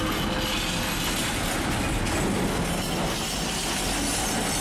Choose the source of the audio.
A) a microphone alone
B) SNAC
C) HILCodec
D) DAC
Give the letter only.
A